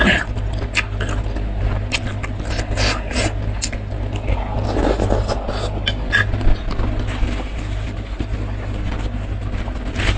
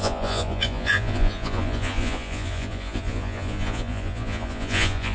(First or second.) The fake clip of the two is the second